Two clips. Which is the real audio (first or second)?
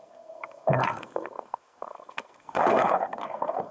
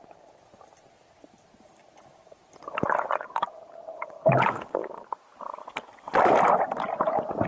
second